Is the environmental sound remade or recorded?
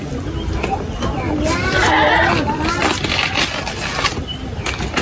recorded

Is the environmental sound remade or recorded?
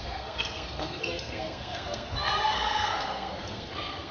remade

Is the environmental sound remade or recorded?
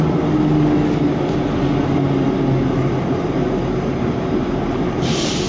recorded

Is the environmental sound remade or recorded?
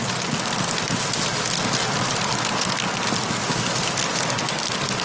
recorded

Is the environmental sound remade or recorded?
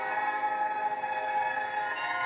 recorded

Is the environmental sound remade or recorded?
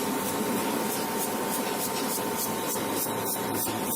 remade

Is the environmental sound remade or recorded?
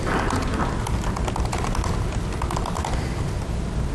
recorded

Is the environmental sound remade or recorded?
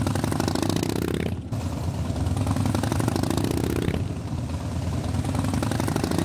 recorded